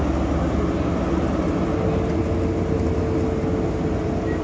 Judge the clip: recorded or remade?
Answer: recorded